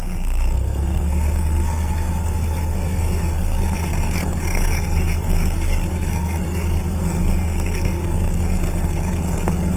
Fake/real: fake